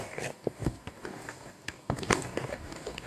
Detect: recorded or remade remade